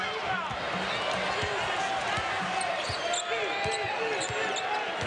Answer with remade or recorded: recorded